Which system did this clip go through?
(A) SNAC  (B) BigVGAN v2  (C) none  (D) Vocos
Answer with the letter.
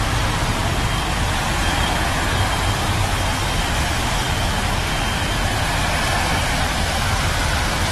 B